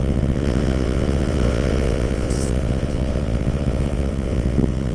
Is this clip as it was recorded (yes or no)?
no